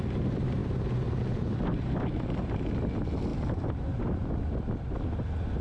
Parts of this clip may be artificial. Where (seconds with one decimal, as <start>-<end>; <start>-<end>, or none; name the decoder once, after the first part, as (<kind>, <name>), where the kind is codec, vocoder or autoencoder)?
none